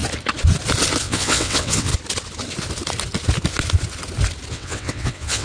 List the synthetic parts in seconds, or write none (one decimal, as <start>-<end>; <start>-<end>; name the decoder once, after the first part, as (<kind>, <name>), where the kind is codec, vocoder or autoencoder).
1.0-1.9 (vocoder, WaveNeXt); 4.5-5.4